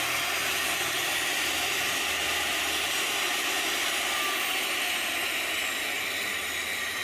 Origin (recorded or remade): recorded